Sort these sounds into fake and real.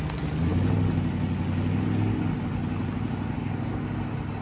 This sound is real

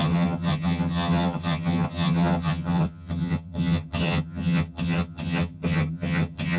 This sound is fake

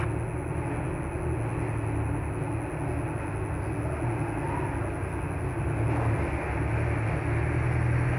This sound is real